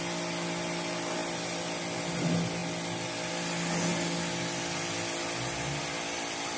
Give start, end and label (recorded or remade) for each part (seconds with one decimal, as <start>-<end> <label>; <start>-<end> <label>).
0.0-6.6 recorded